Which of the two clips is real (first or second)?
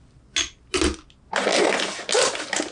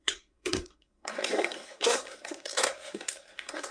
first